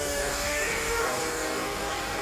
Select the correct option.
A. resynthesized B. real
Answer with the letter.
A